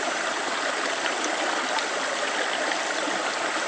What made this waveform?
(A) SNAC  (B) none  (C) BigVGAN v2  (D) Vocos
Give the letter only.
C